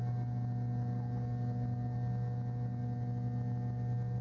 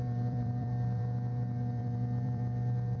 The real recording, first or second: first